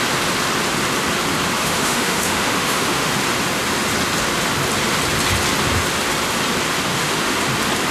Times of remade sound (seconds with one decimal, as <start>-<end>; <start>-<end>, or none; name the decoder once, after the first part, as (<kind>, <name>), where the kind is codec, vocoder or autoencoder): 1.6-3.1 (autoencoder, DAC-VAE); 6.9-7.4